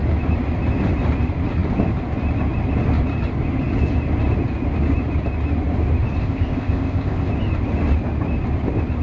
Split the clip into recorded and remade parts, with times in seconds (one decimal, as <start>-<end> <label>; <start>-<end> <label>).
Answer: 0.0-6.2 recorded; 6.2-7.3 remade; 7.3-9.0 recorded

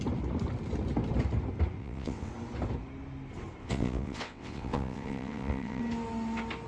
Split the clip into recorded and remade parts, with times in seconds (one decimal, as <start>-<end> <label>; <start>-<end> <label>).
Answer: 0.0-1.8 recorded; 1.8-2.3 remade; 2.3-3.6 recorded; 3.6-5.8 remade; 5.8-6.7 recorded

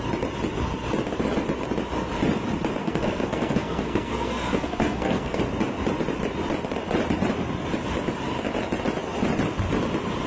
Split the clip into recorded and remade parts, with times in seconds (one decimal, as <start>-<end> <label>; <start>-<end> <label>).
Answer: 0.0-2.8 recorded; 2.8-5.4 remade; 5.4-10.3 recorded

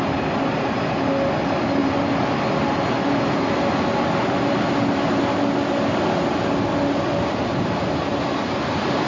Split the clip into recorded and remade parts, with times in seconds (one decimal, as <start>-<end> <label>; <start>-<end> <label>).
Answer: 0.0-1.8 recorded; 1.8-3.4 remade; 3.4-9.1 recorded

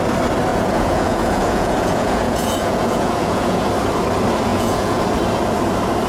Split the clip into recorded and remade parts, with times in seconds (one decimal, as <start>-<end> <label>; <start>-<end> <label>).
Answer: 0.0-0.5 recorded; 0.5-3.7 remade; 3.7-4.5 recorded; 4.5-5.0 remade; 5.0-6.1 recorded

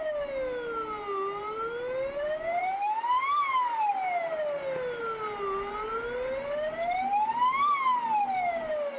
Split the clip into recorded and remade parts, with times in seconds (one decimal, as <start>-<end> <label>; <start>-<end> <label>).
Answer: 0.0-9.0 recorded

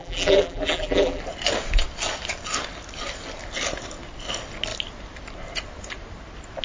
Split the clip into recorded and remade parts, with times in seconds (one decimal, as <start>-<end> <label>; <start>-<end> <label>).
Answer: 0.0-1.2 remade; 1.2-6.6 recorded

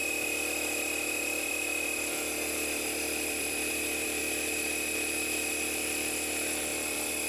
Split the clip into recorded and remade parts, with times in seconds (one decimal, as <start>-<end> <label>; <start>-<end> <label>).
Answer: 0.0-4.2 remade; 4.2-6.7 recorded; 6.7-7.3 remade